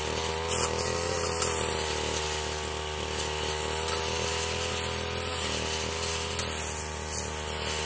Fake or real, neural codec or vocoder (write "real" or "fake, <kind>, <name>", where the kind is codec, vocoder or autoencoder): real